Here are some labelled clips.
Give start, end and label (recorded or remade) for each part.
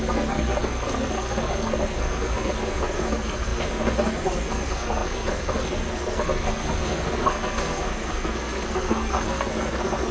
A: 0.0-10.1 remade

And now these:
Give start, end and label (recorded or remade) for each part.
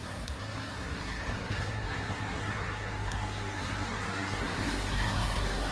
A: 0.0-5.7 remade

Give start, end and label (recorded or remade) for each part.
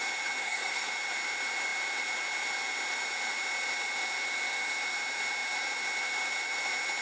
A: 0.0-0.4 recorded; 0.4-0.9 remade; 0.9-7.0 recorded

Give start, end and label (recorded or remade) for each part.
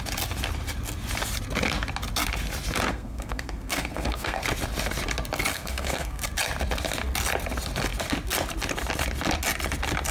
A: 0.0-2.9 recorded; 2.9-4.4 remade; 4.4-5.5 recorded; 5.5-6.2 remade; 6.2-10.1 recorded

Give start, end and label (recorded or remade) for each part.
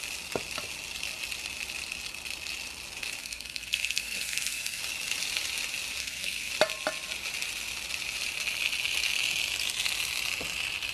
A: 0.0-3.2 recorded; 3.2-4.8 remade; 4.8-6.0 recorded; 6.0-6.5 remade; 6.5-10.9 recorded